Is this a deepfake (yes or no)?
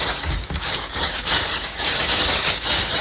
yes